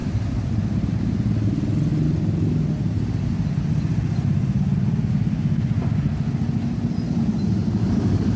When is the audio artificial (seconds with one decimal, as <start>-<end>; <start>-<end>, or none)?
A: 0.0-1.0; 7.6-8.4